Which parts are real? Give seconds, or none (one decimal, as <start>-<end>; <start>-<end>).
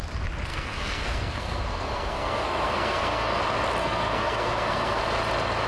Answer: 0.0-0.5; 3.4-3.8; 5.0-5.7